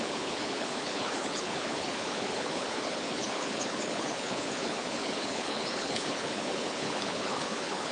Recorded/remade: remade